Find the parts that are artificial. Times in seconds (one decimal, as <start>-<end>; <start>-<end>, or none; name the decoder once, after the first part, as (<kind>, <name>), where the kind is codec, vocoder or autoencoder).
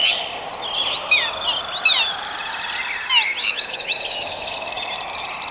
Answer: 3.4-4.5 (autoencoder, DAC-VAE)